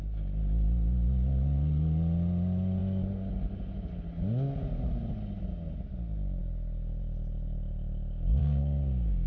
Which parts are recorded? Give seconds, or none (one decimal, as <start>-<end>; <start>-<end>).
0.0-8.4